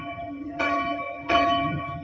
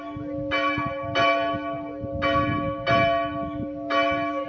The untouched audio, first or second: second